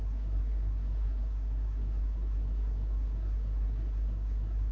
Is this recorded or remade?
remade